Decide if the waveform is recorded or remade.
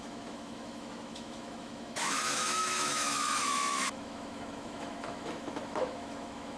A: remade